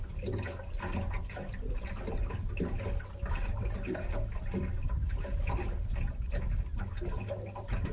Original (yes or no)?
yes